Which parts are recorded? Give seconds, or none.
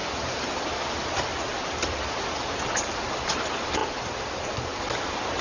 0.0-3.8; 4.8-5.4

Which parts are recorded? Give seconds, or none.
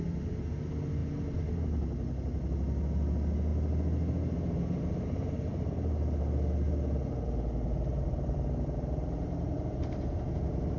0.0-7.9; 10.3-10.8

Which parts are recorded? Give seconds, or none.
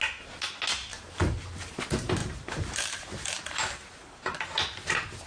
0.0-0.9; 1.6-2.2; 4.4-5.3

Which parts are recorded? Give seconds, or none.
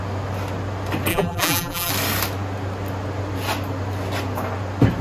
0.0-1.1; 1.9-5.0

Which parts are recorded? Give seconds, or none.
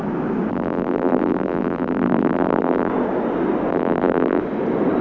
0.0-0.5; 2.9-3.7; 4.4-5.0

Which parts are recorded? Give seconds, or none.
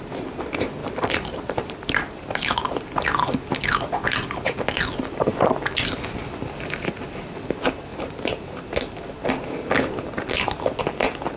0.0-0.8; 2.6-7.9; 8.7-11.4